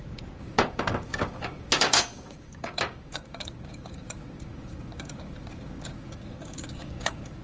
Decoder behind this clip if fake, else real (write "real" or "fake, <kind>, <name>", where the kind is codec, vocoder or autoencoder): fake, codec, DAC